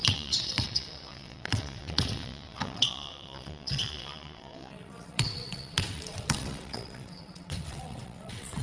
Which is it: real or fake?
fake